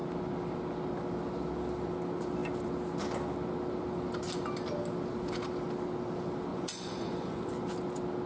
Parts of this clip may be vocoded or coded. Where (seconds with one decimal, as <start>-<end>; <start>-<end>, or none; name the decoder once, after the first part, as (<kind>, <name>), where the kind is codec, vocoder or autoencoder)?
6.5-7.4 (vocoder, Vocos)